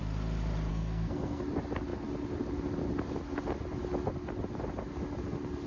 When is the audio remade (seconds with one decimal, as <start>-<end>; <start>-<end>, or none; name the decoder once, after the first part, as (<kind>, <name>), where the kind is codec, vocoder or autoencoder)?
0.7-1.4 (codec, SNAC)